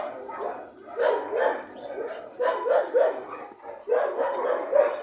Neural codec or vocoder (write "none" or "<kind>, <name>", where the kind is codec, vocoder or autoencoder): none